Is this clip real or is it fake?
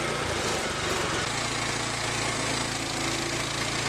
real